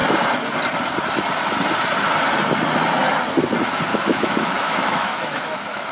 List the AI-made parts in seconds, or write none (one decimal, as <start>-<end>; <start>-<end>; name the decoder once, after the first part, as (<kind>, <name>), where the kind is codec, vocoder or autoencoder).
3.9-5.9 (autoencoder, DAC-VAE)